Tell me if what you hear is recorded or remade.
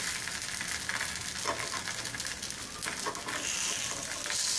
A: recorded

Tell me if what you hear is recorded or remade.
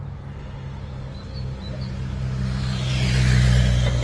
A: recorded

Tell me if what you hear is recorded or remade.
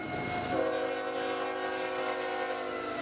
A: recorded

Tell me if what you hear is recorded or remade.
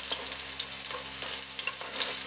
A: recorded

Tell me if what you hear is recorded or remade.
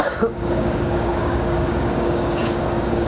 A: remade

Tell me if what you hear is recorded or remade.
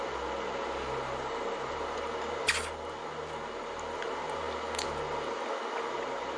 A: recorded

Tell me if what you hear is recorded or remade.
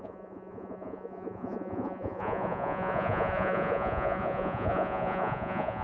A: remade